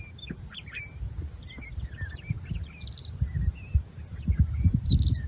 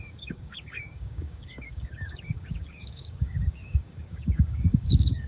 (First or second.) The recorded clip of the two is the first